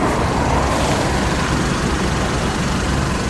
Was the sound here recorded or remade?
recorded